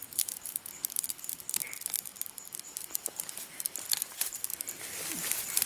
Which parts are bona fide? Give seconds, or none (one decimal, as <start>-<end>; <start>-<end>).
4.5-5.7